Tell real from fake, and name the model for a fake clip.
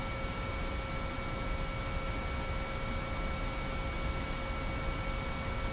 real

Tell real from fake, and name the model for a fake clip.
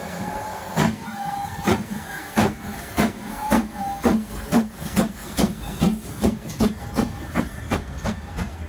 fake, codec, SNAC